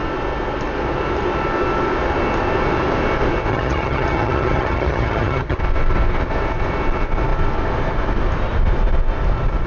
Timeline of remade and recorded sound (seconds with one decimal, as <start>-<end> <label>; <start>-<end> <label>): 0.0-3.5 recorded; 3.5-5.6 remade; 5.6-9.7 recorded